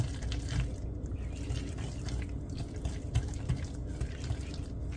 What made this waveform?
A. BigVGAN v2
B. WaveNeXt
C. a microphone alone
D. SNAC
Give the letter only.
A